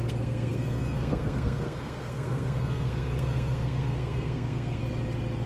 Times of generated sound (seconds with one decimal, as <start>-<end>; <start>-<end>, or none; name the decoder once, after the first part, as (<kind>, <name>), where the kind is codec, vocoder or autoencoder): 0.0-4.8 (codec, SNAC)